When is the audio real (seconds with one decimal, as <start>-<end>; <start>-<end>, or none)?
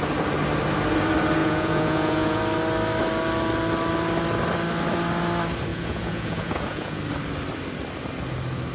0.0-1.4; 2.4-5.7; 7.0-8.7